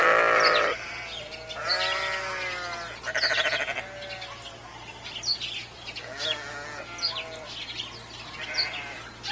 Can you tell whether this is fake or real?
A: real